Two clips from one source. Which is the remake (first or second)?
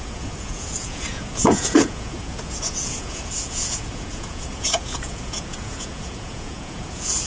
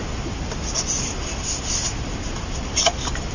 first